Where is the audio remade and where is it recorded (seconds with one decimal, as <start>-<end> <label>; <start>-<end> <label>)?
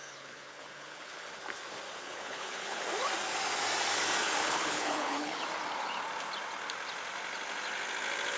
0.0-1.4 remade; 1.4-2.0 recorded; 2.0-2.8 remade; 2.8-4.4 recorded; 4.4-5.4 remade; 5.4-8.4 recorded